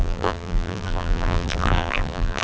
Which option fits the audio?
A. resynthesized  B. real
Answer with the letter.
A